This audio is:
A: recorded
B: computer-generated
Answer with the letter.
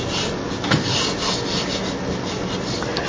A